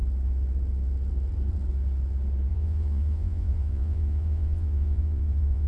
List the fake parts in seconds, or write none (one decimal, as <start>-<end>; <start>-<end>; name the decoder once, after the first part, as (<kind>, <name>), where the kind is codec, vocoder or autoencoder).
2.5-5.7 (vocoder, Vocos)